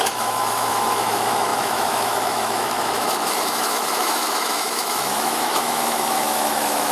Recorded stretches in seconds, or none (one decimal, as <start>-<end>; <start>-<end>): none

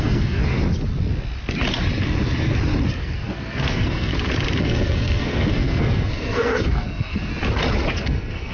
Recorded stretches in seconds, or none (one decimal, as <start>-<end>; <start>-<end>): 0.4-3.0; 4.1-4.6; 7.3-7.9